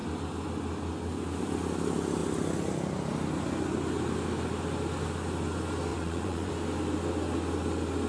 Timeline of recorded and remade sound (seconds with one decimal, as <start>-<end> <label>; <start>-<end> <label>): 0.0-5.9 recorded; 5.9-6.5 remade; 6.5-8.1 recorded